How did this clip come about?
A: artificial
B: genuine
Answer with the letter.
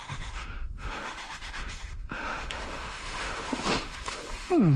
A